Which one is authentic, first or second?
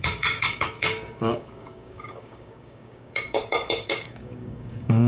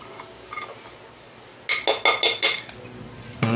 second